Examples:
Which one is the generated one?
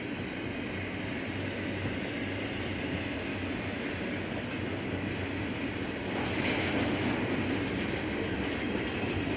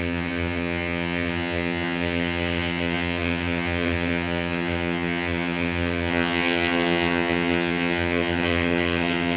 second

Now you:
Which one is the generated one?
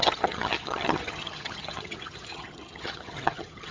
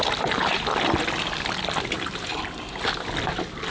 first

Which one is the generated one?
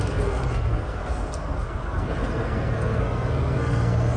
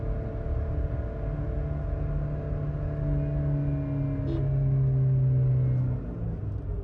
first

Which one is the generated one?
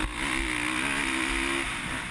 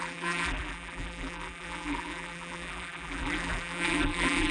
second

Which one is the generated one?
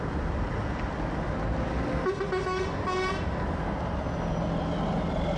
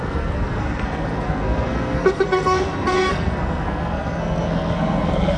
second